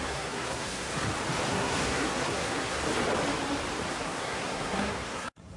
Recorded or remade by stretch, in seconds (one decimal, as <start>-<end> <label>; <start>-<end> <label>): 0.0-0.9 remade; 0.9-1.5 recorded; 1.5-2.8 remade; 2.8-3.9 recorded; 3.9-5.6 remade